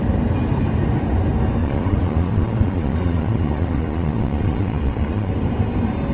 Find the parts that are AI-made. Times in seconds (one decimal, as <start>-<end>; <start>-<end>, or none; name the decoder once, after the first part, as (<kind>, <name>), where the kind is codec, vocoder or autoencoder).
1.6-5.3 (vocoder, Vocos)